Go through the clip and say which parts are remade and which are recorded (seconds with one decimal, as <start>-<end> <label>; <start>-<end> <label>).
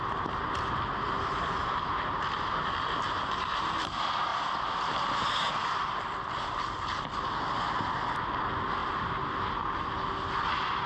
0.0-10.9 recorded